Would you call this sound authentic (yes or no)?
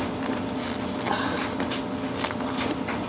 yes